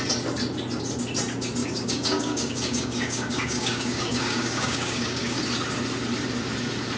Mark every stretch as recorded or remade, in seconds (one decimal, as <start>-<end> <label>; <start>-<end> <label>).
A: 0.0-1.6 recorded; 1.6-5.4 remade; 5.4-7.0 recorded